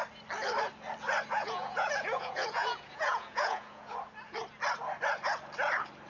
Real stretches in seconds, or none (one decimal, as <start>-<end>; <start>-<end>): 0.0-1.4; 4.0-6.1